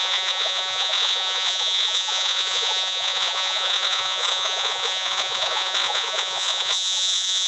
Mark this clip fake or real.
fake